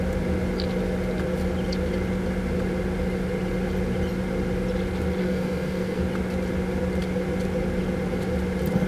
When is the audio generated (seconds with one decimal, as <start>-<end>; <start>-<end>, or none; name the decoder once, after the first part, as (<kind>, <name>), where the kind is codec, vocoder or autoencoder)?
5.2-6.0 (codec, SNAC)